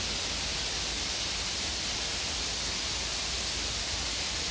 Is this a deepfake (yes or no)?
yes